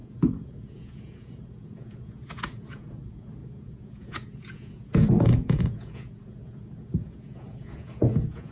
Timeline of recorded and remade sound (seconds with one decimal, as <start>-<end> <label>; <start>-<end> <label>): 0.0-8.5 remade